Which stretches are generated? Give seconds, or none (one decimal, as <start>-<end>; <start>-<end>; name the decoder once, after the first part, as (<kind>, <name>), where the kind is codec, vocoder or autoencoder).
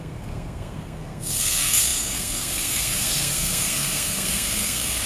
0.0-5.1 (codec, SNAC)